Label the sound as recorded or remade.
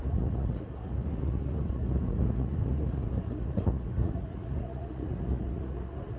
remade